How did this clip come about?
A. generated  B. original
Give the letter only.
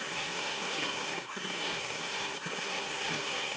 A